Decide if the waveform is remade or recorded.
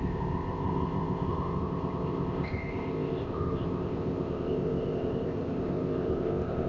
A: remade